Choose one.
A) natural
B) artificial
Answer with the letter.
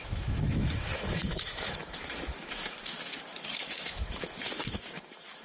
B